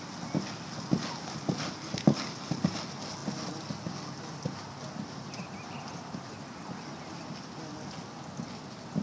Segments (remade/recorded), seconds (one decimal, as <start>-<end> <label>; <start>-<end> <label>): 0.0-9.0 recorded